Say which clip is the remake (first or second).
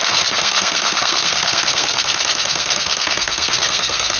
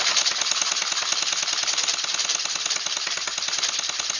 first